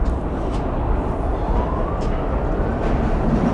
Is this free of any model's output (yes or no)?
yes